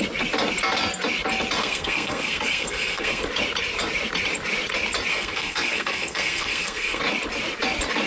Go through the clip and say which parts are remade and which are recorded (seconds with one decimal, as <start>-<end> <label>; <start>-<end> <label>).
0.0-1.6 recorded; 1.6-3.2 remade; 3.2-5.1 recorded; 5.1-7.0 remade; 7.0-8.1 recorded

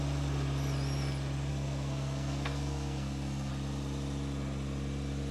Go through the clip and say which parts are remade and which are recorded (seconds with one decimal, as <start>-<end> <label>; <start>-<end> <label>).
0.0-1.5 recorded; 1.5-3.5 remade; 3.5-5.3 recorded

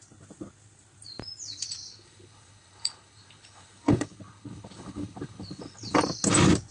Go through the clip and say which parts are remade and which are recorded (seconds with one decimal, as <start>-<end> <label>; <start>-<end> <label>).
0.0-1.9 recorded; 1.9-5.9 remade; 5.9-6.7 recorded